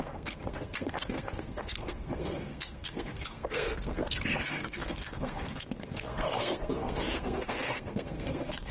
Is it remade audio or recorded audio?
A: remade